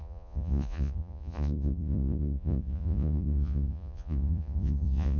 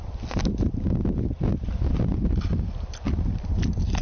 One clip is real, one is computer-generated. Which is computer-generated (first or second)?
first